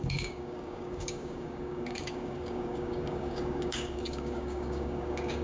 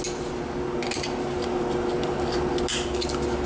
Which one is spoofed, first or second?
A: first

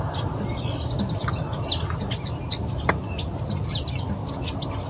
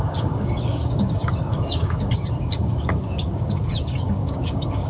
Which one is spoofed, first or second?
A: second